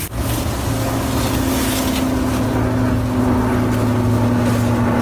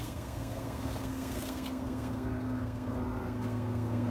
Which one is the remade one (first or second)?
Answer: second